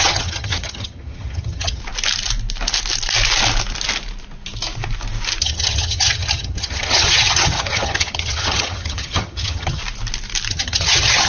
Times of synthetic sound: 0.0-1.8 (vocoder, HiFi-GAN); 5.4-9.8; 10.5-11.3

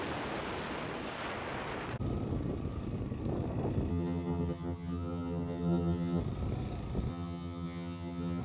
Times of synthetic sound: 3.9-6.2 (vocoder, HiFi-GAN); 7.1-8.4

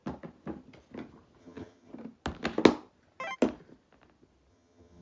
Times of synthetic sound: 1.4-1.9 (vocoder, HiFi-GAN); 4.5-5.0

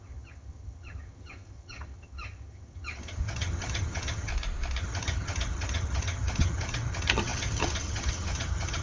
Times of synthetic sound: 0.0-4.3 (vocoder, HiFi-GAN); 4.8-8.8

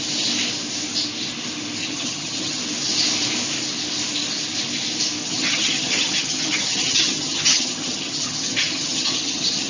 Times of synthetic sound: 1.8-2.6 (vocoder, HiFi-GAN); 5.2-9.7

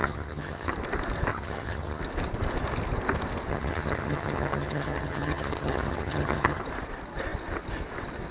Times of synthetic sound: 0.0-0.7 (vocoder, HiFi-GAN); 1.3-2.0; 3.5-6.6

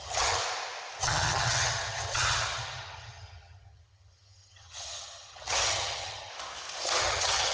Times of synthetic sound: 0.0-0.4 (vocoder, HiFi-GAN); 1.0-6.3; 7.0-7.5

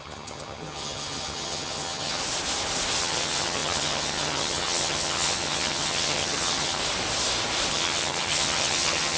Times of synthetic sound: 0.0-2.2 (vocoder, HiFi-GAN); 3.0-6.8; 7.7-9.2